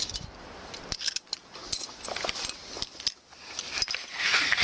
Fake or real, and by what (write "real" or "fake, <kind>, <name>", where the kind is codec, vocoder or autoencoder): real